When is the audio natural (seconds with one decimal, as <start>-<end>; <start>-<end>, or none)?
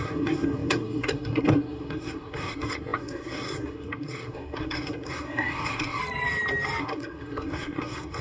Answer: 6.0-6.8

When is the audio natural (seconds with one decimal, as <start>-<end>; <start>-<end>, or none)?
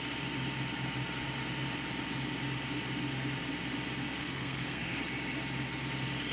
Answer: 0.0-4.2; 5.0-6.3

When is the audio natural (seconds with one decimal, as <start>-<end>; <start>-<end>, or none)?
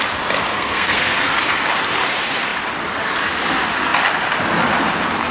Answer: 0.0-0.5; 1.3-5.3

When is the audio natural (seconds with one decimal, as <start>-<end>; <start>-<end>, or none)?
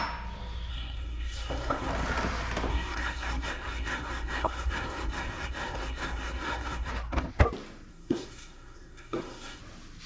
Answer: 0.0-0.7; 1.9-2.7; 6.9-7.9; 9.6-10.1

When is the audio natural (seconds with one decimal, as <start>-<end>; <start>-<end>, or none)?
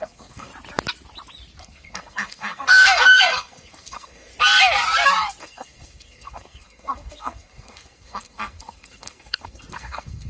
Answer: 0.5-1.6; 4.3-5.4